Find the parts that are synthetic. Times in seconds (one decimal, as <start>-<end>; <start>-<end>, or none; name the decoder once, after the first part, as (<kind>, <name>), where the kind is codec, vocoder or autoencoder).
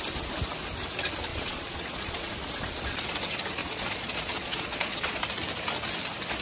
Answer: 1.3-2.3 (vocoder, Vocos); 3.6-5.2